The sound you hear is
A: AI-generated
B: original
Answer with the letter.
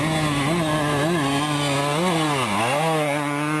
B